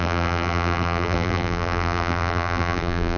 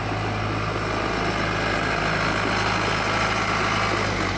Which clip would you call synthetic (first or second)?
first